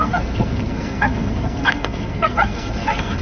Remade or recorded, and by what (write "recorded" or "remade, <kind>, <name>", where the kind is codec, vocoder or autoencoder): remade, codec, SNAC